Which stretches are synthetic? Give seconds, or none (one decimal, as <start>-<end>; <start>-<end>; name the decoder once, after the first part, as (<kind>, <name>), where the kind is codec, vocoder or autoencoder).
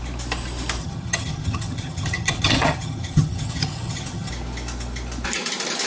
0.8-4.3 (vocoder, HiFi-GAN)